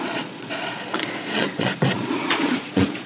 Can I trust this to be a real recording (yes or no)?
no